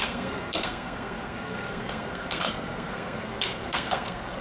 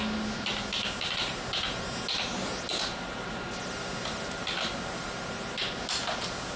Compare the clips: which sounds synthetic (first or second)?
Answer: first